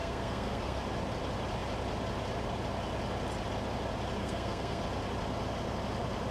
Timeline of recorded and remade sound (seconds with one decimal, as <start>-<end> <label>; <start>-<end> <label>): 0.0-0.8 remade; 0.8-4.2 recorded; 4.2-4.8 remade; 4.8-6.3 recorded